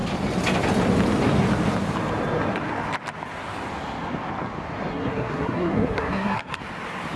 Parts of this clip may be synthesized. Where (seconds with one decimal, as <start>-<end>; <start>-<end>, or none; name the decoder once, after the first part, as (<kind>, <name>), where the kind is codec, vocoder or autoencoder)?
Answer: 4.9-6.6 (codec, SNAC)